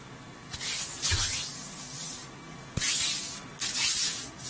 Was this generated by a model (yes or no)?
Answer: no